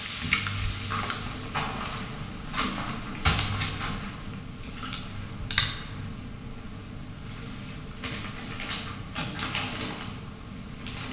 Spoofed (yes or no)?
no